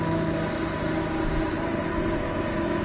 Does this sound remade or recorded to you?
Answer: recorded